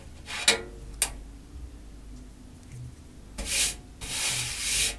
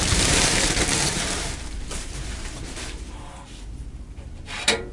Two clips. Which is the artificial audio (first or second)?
second